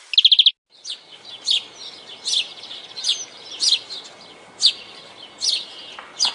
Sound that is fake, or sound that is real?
real